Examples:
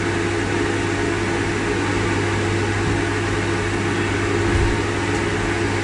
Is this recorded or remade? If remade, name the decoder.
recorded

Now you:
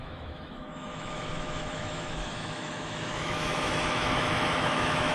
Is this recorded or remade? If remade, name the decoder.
remade, autoencoder, DAC-VAE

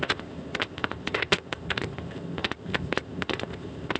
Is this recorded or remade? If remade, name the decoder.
remade, codec, ZipCodec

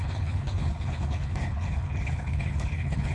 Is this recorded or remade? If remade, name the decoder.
remade, codec, HILCodec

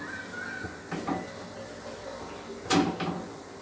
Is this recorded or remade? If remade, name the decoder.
recorded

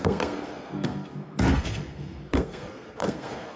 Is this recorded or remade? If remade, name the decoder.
remade, codec, SNAC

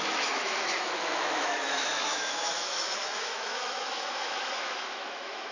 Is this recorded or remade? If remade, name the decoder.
remade, autoencoder, DAC-VAE